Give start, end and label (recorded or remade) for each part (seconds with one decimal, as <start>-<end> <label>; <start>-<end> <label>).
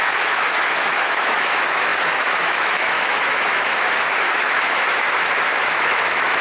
0.0-6.4 remade